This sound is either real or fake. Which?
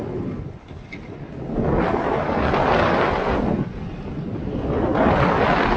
real